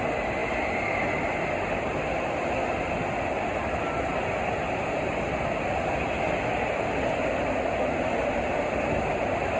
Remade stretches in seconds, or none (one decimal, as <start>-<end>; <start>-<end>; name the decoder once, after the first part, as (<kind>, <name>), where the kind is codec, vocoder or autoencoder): none